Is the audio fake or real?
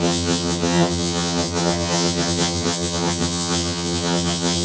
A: fake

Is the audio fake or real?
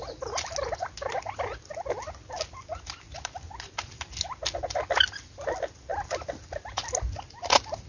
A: real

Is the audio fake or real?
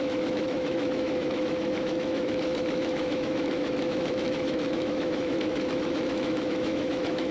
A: fake